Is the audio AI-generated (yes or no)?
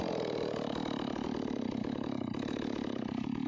no